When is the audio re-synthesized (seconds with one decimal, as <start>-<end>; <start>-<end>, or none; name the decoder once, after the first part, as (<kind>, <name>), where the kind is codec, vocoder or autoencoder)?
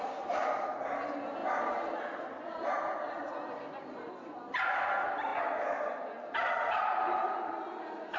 none